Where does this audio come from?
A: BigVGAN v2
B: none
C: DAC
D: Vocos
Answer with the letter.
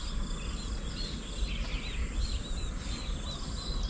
B